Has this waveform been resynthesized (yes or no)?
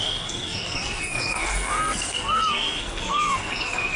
yes